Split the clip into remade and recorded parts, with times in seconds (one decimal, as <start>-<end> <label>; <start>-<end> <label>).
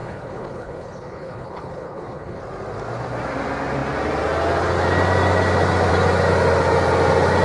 0.0-2.4 remade; 2.4-7.4 recorded